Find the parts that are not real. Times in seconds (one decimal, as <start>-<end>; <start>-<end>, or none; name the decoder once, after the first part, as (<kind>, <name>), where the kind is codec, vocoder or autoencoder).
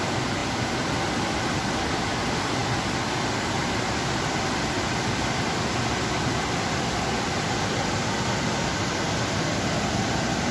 none